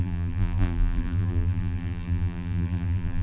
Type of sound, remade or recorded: remade